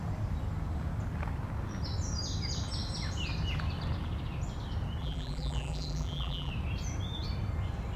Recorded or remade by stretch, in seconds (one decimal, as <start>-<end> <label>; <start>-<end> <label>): 0.0-5.0 recorded; 5.0-6.5 remade; 6.5-8.0 recorded